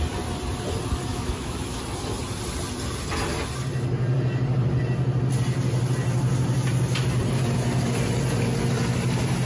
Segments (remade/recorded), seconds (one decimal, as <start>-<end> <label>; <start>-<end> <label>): 0.0-1.1 recorded; 1.1-1.8 remade; 1.8-9.5 recorded